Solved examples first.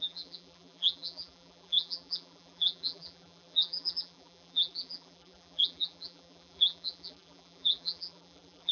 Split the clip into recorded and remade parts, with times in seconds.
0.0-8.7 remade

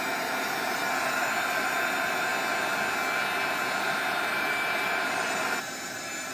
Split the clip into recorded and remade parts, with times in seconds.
0.0-2.3 remade; 2.3-3.8 recorded; 3.8-6.3 remade

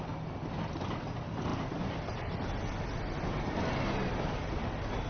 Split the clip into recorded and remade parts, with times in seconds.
0.0-5.1 recorded